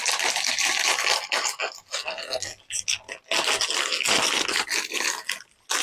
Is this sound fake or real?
real